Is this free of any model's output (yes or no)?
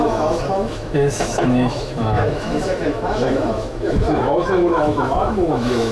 no